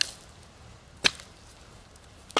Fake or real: real